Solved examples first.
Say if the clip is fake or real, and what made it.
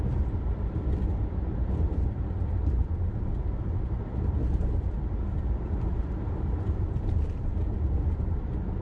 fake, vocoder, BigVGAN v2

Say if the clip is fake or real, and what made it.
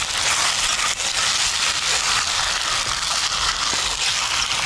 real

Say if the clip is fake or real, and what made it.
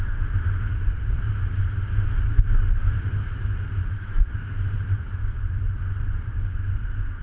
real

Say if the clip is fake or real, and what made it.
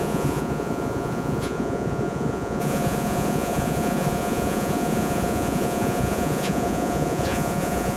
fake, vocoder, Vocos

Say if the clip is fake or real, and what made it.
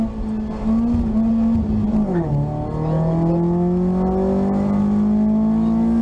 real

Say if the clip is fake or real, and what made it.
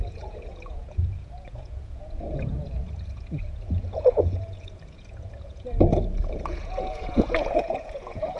fake, vocoder, Vocos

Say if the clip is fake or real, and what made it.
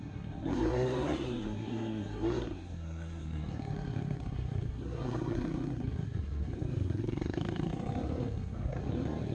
fake, codec, SNAC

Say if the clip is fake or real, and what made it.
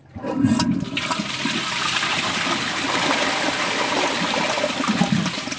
real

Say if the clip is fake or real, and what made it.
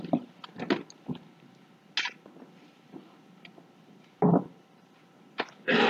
real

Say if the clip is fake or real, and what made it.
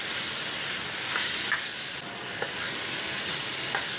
real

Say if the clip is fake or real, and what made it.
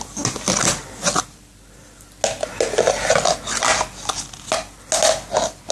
real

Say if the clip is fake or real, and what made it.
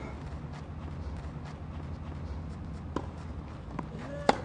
real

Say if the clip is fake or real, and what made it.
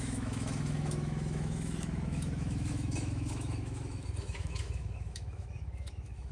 fake, autoencoder, DAC-VAE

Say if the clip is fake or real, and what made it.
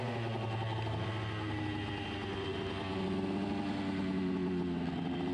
real